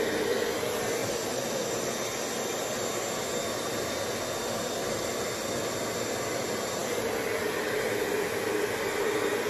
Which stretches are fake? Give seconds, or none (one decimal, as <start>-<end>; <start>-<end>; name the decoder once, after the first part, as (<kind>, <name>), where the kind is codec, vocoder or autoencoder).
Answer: 1.0-1.6 (vocoder, BigVGAN v2)